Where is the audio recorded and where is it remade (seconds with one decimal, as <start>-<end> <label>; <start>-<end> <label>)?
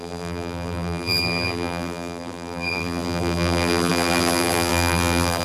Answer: 0.0-5.4 remade